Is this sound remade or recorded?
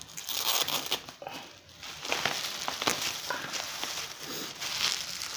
recorded